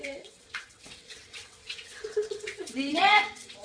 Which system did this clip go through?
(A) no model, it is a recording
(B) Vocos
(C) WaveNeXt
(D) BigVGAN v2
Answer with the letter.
C